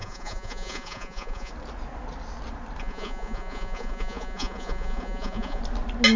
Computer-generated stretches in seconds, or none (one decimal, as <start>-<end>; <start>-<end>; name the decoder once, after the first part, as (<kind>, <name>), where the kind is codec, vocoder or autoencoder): 0.0-1.5 (vocoder, Vocos); 2.8-5.6